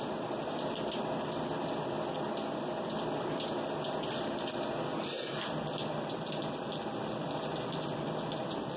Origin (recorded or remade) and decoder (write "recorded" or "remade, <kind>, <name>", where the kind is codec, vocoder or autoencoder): recorded